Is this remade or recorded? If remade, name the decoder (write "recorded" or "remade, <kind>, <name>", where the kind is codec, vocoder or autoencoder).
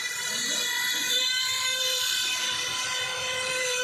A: remade, vocoder, BigVGAN v2